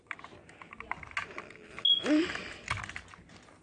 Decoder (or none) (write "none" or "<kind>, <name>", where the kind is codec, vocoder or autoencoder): none